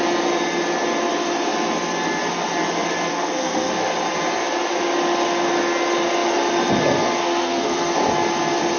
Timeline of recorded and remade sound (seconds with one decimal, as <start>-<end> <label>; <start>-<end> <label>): 0.0-3.1 recorded; 3.1-3.7 remade; 3.7-7.2 recorded; 7.2-7.9 remade; 7.9-8.8 recorded